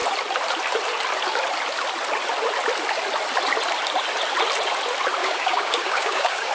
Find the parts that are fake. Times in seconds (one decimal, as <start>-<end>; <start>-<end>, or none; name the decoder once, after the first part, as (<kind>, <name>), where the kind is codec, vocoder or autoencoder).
5.2-6.5 (codec, DAC)